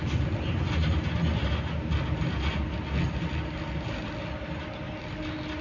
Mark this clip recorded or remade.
recorded